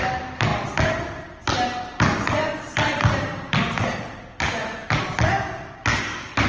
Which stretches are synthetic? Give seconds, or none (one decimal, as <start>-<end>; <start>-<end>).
5.9-6.5